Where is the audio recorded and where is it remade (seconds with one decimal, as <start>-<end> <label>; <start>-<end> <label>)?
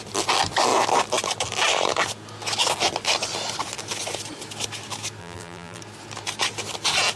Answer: 0.0-5.2 recorded; 5.2-5.8 remade; 5.8-7.2 recorded